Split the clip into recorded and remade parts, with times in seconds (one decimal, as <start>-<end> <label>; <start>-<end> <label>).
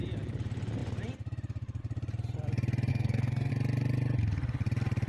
0.0-2.9 recorded; 2.9-3.5 remade; 3.5-5.1 recorded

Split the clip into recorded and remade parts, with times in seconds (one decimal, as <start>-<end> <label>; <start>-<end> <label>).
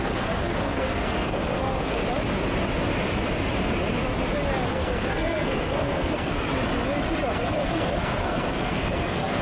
0.0-2.0 remade; 2.0-4.7 recorded; 4.7-6.5 remade; 6.5-7.3 recorded; 7.3-9.4 remade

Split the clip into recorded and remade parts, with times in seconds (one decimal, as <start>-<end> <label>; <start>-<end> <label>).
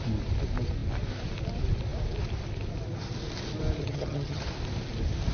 0.0-3.8 recorded; 3.8-4.4 remade; 4.4-5.3 recorded